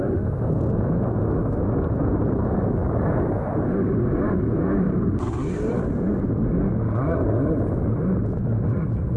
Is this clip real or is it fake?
real